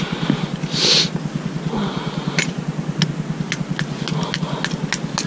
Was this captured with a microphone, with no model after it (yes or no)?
yes